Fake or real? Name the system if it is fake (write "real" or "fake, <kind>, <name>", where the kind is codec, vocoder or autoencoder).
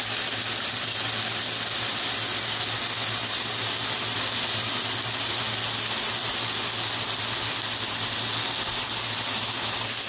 real